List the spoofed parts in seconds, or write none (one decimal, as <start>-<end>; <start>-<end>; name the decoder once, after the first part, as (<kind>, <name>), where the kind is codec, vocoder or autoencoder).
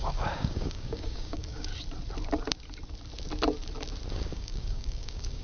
0.0-1.7 (codec, DAC); 4.1-5.4